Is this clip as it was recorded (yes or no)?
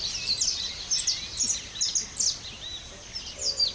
yes